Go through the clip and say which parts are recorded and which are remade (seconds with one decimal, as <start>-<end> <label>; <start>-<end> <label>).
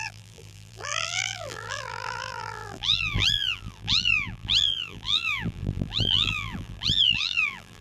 0.0-7.8 remade